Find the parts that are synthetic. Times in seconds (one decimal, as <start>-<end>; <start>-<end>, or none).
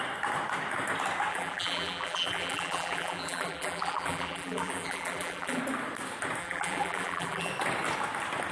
1.3-5.6; 6.4-7.5